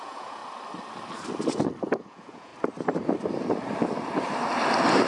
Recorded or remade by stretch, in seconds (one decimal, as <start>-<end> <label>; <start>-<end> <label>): 0.0-0.4 remade; 0.4-2.0 recorded; 2.0-2.5 remade; 2.5-5.1 recorded

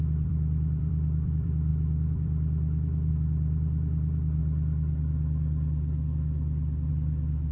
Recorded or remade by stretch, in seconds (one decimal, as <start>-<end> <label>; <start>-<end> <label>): 0.0-4.4 remade; 4.4-6.9 recorded; 6.9-7.5 remade

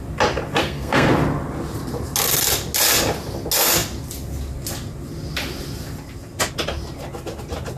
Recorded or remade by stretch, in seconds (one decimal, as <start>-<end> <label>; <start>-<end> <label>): 0.0-0.6 recorded; 0.6-1.1 remade; 1.1-7.8 recorded

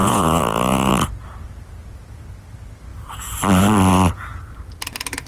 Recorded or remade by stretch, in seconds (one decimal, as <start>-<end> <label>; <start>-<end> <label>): 0.0-0.9 remade; 0.9-5.3 recorded

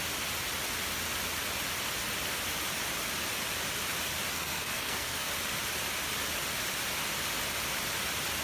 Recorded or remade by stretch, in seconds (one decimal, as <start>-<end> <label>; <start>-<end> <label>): 0.0-4.3 recorded; 4.3-5.3 remade; 5.3-8.4 recorded

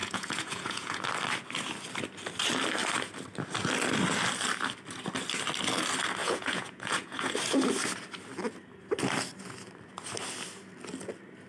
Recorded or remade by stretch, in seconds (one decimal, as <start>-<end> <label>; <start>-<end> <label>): 0.0-1.0 remade; 1.0-6.2 recorded; 6.2-7.3 remade; 7.3-11.5 recorded